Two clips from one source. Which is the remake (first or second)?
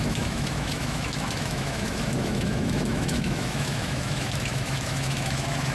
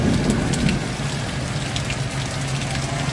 first